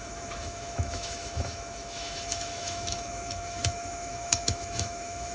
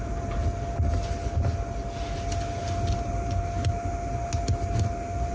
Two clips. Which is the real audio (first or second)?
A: second